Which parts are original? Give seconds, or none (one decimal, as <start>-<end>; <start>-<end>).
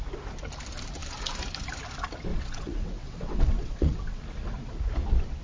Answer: 0.0-2.3; 4.2-5.4